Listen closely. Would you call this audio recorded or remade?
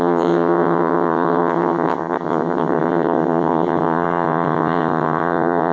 remade